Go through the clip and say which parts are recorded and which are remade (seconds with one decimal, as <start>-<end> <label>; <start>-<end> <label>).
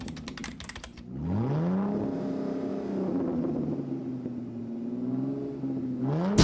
0.0-6.4 recorded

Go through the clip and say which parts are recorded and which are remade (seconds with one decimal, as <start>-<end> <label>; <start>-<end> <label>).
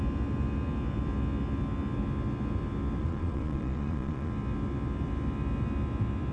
0.0-3.0 recorded; 3.0-4.3 remade; 4.3-6.3 recorded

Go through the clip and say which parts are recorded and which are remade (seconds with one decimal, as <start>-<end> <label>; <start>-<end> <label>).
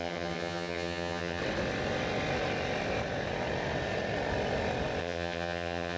0.0-1.4 remade; 1.4-5.0 recorded; 5.0-6.0 remade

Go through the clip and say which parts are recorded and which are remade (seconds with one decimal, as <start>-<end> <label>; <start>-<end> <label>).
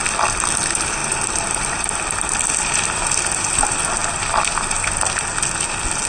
0.0-1.0 recorded; 1.0-3.0 remade; 3.0-4.0 recorded; 4.0-4.5 remade; 4.5-6.1 recorded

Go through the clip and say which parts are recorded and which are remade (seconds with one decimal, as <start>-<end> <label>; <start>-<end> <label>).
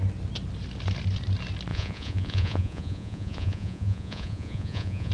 0.0-1.7 recorded; 1.7-5.1 remade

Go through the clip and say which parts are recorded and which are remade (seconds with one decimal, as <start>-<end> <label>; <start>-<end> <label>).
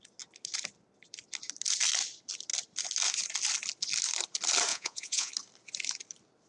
0.0-4.7 recorded; 4.7-5.3 remade; 5.3-6.5 recorded